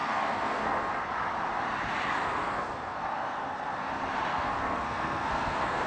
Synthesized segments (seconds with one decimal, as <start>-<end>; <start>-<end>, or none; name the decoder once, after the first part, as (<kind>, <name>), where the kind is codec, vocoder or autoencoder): 0.0-1.1 (codec, SNAC); 2.4-3.9; 4.3-5.9